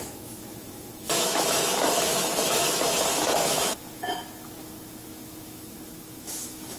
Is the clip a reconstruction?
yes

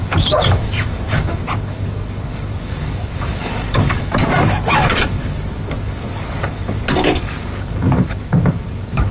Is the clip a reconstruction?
yes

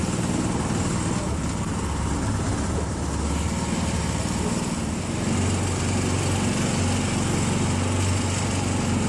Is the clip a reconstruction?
no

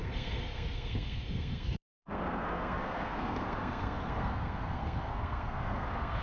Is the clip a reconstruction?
yes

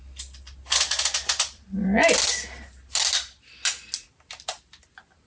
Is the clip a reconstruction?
no